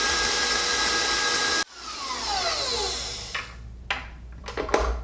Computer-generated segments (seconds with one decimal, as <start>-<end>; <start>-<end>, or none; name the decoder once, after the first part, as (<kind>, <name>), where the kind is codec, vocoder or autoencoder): none